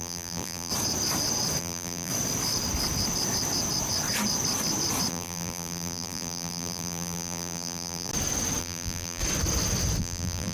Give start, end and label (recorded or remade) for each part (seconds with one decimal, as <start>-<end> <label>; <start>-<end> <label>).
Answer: 0.0-0.7 remade; 0.7-1.6 recorded; 1.6-2.1 remade; 2.1-5.1 recorded; 5.1-8.1 remade; 8.1-8.6 recorded; 8.6-9.2 remade; 9.2-10.0 recorded; 10.0-10.5 remade